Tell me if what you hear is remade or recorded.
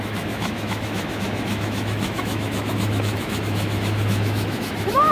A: remade